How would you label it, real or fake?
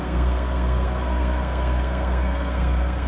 fake